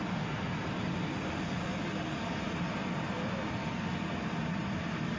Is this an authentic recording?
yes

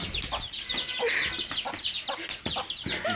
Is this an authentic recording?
yes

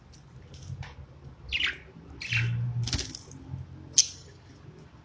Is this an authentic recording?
yes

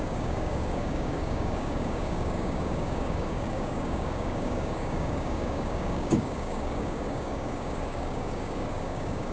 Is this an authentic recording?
no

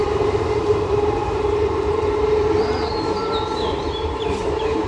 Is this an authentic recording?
no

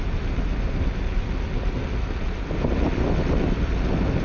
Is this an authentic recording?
yes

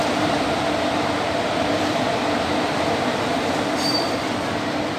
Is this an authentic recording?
no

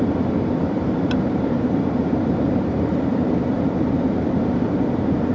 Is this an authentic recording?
no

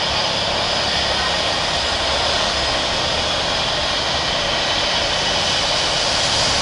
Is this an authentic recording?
yes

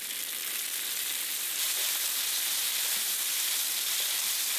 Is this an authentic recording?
no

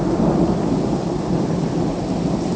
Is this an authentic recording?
yes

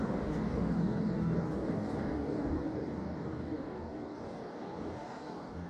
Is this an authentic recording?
no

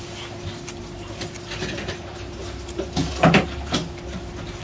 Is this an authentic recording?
yes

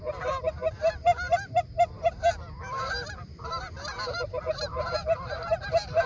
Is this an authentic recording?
no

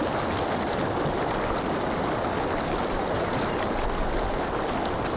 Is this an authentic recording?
yes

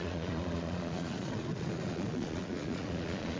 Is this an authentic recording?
no